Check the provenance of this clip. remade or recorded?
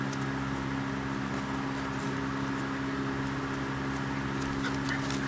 recorded